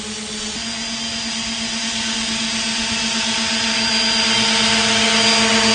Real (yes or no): yes